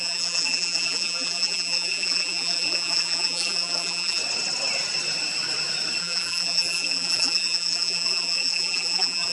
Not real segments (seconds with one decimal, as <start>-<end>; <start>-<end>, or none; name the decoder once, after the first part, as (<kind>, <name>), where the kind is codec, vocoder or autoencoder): 0.0-4.2 (vocoder, BigVGAN v2); 6.0-9.3